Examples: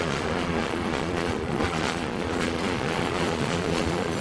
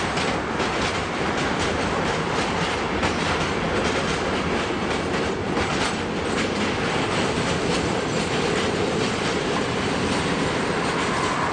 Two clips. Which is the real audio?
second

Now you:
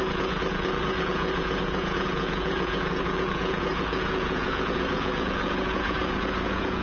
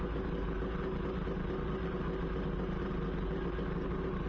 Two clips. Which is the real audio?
second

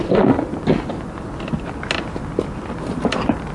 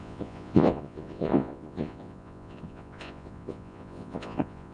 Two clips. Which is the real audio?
first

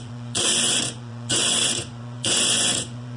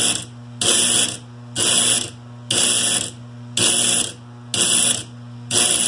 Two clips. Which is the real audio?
second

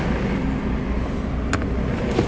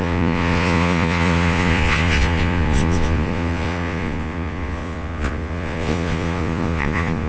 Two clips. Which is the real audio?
first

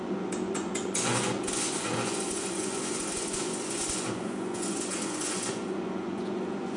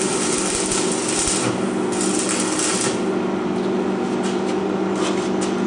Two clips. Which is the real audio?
second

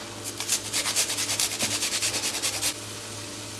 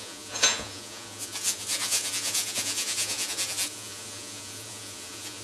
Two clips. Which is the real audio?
first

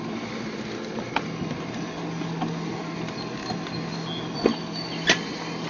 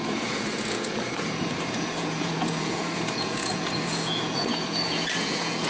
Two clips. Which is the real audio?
first